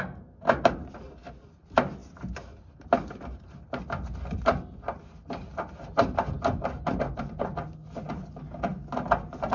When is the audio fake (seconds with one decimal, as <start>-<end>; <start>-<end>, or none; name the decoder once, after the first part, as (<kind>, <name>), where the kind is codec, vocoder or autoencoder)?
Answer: none